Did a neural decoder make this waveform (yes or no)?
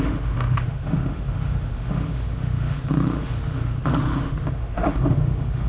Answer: yes